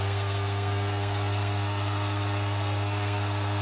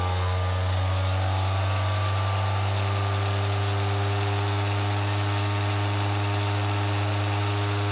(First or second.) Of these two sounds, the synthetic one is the first